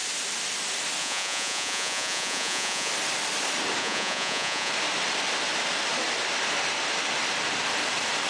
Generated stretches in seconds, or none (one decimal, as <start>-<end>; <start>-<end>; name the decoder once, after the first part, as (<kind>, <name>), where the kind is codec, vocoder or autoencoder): 1.0-2.9 (vocoder, Vocos); 3.8-4.7